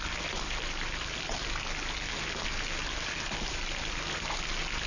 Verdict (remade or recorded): recorded